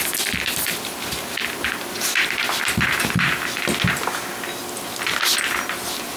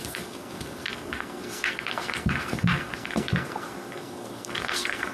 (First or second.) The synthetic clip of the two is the second